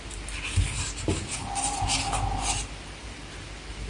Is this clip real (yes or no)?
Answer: yes